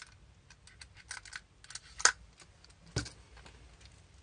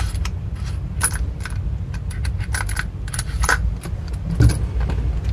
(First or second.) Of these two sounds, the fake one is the second